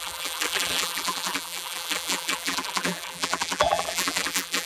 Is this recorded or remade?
remade